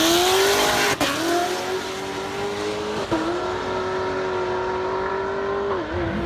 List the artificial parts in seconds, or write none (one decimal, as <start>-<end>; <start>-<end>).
none